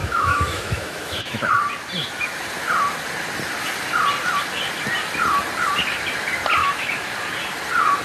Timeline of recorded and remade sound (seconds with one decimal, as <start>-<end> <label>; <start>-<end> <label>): 0.0-1.5 remade; 1.5-6.6 recorded; 6.6-7.1 remade; 7.1-8.0 recorded